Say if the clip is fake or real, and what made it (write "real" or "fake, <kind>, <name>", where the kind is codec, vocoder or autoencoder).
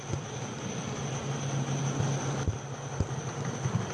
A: real